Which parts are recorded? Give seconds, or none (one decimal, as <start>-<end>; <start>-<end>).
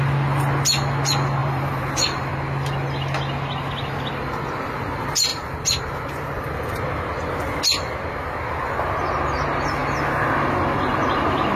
0.0-1.4; 2.3-11.6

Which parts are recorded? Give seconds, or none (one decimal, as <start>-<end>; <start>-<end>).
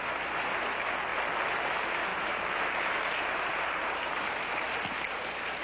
0.0-2.1; 4.3-5.6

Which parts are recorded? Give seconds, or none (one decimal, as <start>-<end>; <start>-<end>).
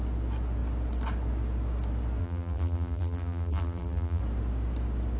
0.0-2.2; 4.2-5.2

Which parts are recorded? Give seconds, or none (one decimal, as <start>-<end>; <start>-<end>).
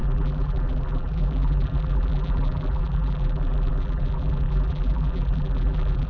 none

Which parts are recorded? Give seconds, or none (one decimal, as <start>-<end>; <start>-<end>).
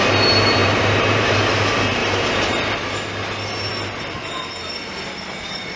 0.0-0.6; 1.4-2.0; 2.7-5.8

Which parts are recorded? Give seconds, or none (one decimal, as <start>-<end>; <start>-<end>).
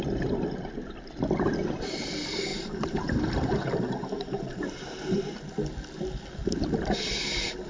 0.0-2.5; 4.9-7.7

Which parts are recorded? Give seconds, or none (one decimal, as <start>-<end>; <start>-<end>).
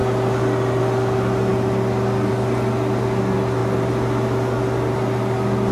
0.0-5.7